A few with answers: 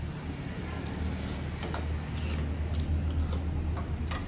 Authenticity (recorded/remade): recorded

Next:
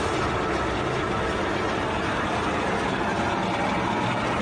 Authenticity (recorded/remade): recorded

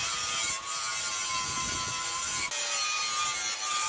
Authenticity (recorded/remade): recorded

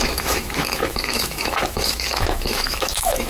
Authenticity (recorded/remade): remade